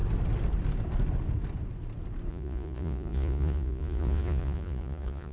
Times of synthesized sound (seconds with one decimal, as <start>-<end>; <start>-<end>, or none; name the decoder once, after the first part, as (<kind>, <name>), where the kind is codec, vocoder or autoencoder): 2.3-5.3 (vocoder, Vocos)